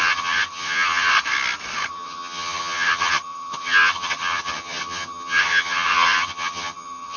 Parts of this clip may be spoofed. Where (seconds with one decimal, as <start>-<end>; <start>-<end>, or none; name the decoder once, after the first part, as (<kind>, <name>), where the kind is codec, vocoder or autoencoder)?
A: 0.0-1.1 (vocoder, HiFi-GAN); 1.9-7.2